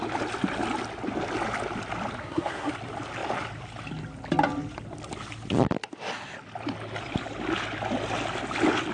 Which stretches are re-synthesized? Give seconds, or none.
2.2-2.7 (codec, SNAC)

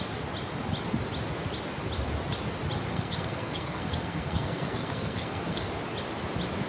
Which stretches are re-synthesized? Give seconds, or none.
2.9-5.7 (codec, SNAC)